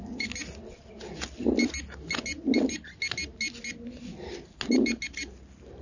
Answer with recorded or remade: recorded